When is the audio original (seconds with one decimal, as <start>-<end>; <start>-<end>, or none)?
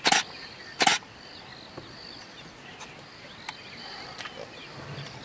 0.0-5.2